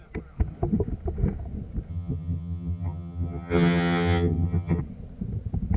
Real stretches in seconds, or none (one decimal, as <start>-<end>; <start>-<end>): 0.0-1.9; 4.8-5.8